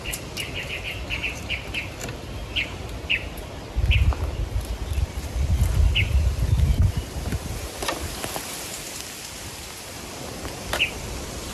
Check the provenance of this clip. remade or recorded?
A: remade